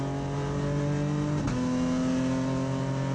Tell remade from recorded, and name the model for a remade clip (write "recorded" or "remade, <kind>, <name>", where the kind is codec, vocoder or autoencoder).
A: recorded